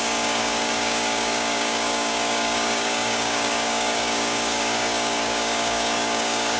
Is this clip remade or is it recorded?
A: remade